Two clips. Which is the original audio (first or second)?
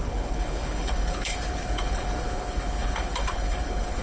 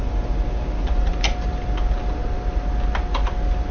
second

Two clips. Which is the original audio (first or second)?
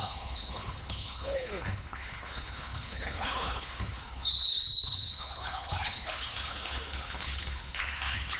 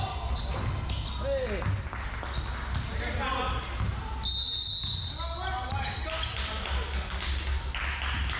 second